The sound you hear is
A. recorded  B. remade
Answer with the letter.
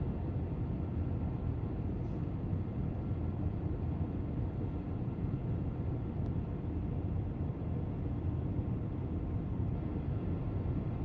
A